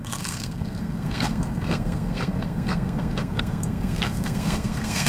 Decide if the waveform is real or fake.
fake